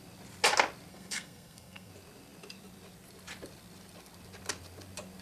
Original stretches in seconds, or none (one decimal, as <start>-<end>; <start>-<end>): 0.0-0.9; 1.9-5.2